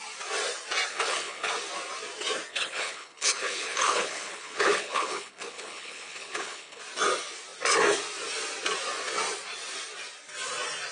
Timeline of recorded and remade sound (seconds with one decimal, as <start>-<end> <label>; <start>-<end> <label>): 0.0-0.9 recorded; 0.9-1.5 remade; 1.5-2.5 recorded; 2.5-6.8 remade; 6.8-10.9 recorded